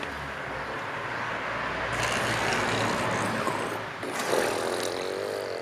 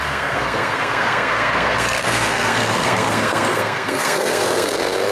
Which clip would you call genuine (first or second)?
first